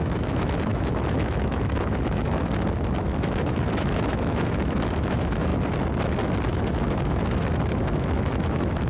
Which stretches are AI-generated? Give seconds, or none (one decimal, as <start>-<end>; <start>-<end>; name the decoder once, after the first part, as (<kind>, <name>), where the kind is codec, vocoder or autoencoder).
0.0-2.4 (autoencoder, DAC-VAE); 3.0-5.5; 6.5-8.9